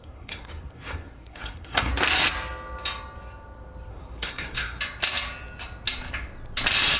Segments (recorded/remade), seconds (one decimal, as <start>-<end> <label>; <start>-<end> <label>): 0.0-1.9 remade; 1.9-3.9 recorded; 3.9-4.8 remade; 4.8-7.0 recorded